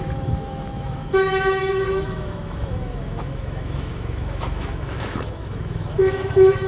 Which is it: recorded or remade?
remade